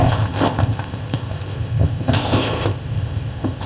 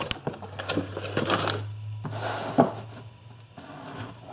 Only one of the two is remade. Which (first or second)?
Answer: first